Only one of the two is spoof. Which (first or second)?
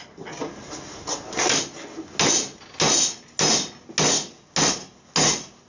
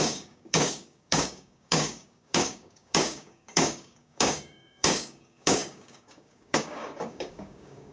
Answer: second